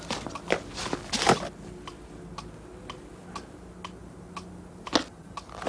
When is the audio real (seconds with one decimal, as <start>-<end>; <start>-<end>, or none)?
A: 0.0-5.7